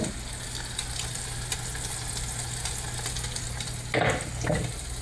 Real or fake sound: real